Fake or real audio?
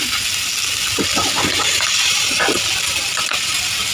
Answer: real